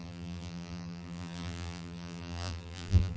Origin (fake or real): fake